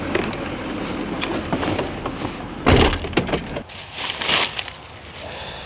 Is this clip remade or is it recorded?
recorded